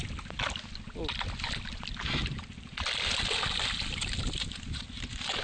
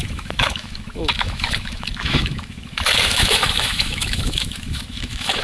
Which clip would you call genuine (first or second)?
first